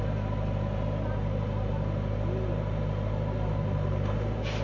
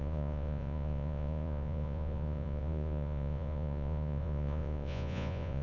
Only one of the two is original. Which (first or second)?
first